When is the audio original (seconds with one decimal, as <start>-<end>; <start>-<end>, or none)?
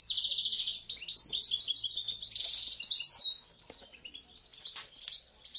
0.0-5.6